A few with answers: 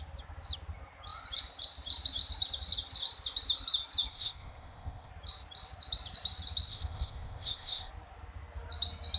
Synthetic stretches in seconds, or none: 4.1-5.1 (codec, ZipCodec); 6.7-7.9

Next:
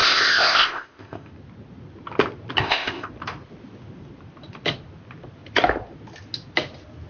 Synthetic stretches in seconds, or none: 0.0-1.3 (codec, ZipCodec); 2.6-3.1

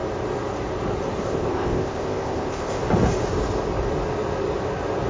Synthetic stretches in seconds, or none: 1.2-2.8 (codec, ZipCodec)

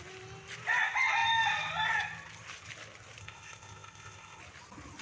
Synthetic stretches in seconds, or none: 3.2-4.4 (codec, ZipCodec)

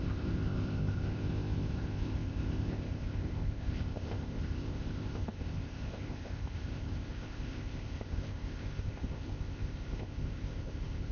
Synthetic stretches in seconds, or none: 0.0-11.1 (codec, ZipCodec)

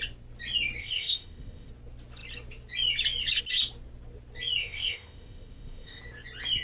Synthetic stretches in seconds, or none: 0.8-1.7 (codec, ZipCodec); 4.6-6.0

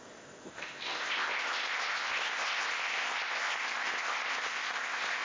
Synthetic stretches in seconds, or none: 0.0-5.2 (codec, ZipCodec)

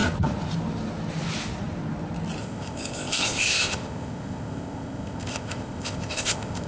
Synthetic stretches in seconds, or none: 2.4-6.7 (codec, ZipCodec)